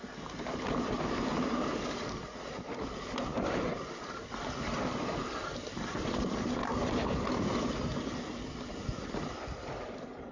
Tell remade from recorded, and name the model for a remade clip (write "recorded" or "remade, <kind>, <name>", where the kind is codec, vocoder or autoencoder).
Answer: recorded